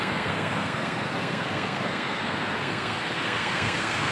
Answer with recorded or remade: remade